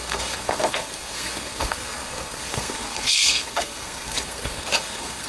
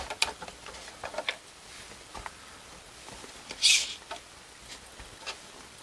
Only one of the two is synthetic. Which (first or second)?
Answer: first